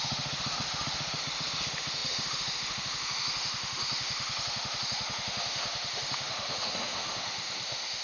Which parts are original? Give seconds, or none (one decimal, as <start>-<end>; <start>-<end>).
none